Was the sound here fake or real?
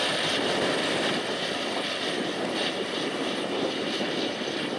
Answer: fake